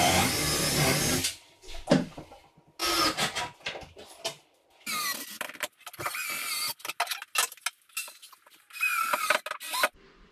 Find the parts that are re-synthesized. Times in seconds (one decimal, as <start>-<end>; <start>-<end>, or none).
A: none